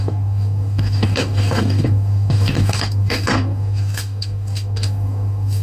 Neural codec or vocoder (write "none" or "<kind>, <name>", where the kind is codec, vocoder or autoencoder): codec, DAC